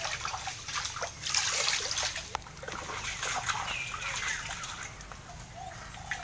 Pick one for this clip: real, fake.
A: real